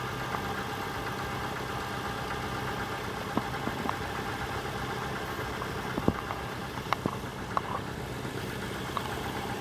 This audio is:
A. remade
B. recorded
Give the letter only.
B